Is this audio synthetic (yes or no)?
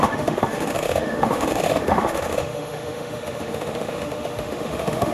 yes